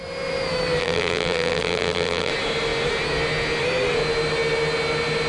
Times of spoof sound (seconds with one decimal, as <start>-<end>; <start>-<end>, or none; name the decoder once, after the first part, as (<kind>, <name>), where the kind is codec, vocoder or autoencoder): 0.8-2.3 (vocoder, BigVGAN v2)